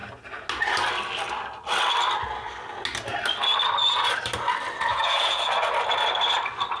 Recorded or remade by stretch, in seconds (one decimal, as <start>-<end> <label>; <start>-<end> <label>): 0.0-4.9 recorded; 4.9-5.4 remade; 5.4-6.8 recorded